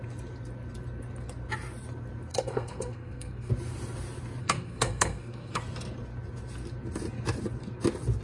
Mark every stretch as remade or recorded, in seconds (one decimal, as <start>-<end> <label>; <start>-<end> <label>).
0.0-2.3 recorded; 2.3-3.5 remade; 3.5-4.4 recorded; 4.4-5.6 remade; 5.6-8.2 recorded